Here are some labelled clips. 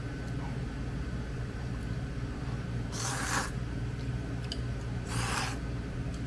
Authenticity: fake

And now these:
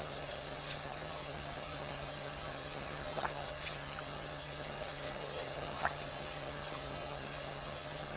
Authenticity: fake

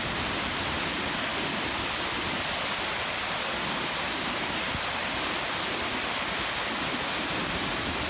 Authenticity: real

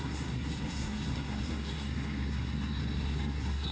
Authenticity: fake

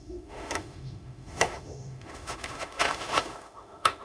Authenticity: fake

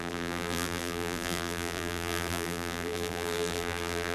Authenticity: fake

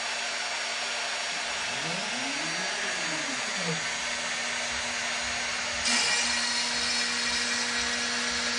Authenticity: real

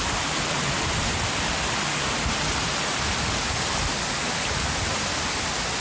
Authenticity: real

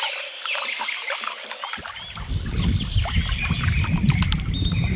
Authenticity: real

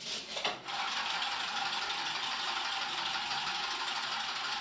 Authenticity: real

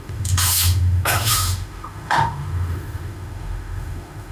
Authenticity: fake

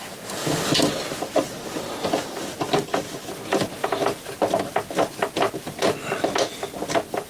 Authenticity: real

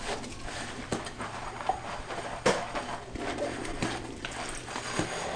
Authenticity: fake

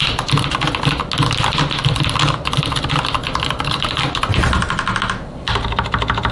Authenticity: real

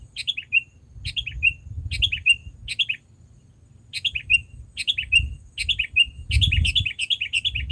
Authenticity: real